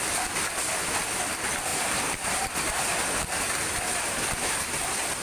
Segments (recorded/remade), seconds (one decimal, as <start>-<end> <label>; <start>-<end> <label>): 0.0-5.2 recorded